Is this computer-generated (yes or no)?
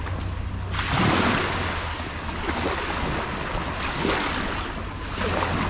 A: no